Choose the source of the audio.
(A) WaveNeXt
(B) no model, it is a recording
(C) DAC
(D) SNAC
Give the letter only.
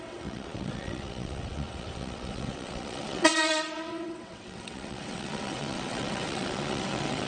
A